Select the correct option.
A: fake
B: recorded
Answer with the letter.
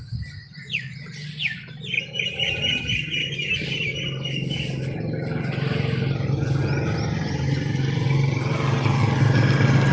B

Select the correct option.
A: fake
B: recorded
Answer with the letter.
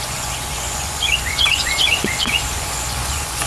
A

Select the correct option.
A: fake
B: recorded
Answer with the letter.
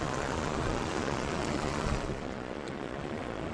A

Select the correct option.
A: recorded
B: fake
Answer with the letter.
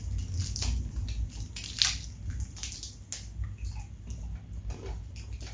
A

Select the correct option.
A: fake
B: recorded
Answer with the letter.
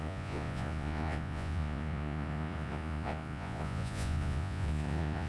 A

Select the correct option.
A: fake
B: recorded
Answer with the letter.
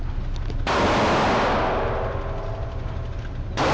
B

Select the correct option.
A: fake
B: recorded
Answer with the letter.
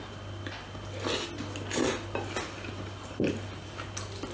B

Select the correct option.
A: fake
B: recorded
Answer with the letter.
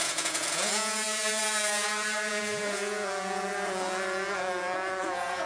A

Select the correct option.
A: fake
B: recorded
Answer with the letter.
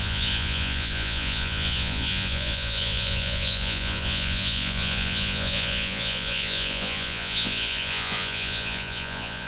A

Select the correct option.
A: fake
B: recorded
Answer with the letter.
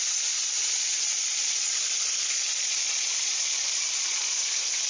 A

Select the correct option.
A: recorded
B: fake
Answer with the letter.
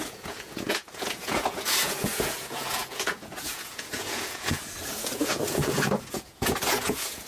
B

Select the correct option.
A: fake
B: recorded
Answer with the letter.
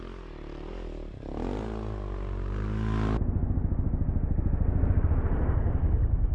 B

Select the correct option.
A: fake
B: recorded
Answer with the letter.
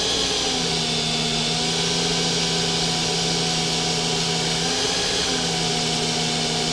B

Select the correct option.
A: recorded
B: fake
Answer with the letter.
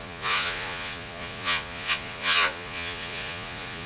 B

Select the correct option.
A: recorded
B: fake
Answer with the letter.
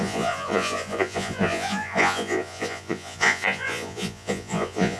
B